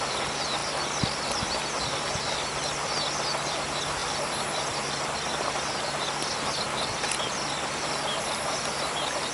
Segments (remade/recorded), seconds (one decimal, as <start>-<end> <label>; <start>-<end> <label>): 0.0-9.3 recorded